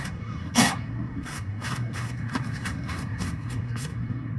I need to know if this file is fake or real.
fake